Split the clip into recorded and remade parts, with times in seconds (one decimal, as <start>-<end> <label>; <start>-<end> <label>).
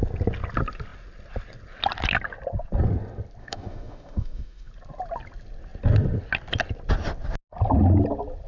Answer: 0.0-3.4 recorded; 3.4-4.7 remade; 4.7-8.5 recorded